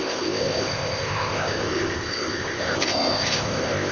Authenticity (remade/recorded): remade